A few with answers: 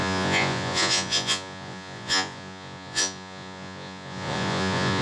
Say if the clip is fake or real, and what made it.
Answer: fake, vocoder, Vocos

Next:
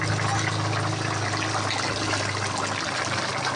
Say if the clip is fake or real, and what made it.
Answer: real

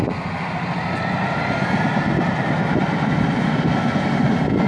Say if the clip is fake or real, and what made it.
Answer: real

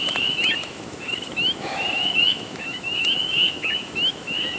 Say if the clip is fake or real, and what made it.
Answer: fake, autoencoder, DAC-VAE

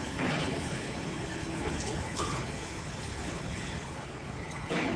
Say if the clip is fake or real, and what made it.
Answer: fake, codec, HILCodec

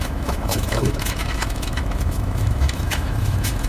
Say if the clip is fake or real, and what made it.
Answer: fake, autoencoder, DAC-VAE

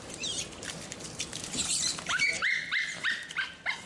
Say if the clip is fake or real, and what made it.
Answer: fake, vocoder, BigVGAN v2